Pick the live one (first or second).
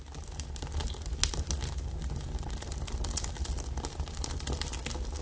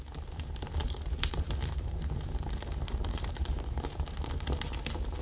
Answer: first